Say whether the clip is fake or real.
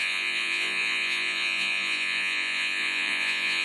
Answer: fake